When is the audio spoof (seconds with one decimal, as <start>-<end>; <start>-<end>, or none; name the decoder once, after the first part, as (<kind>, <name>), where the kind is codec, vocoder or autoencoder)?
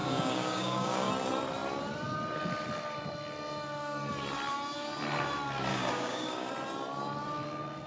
0.0-1.1 (codec, DAC); 5.7-6.5